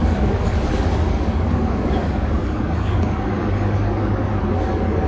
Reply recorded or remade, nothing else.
remade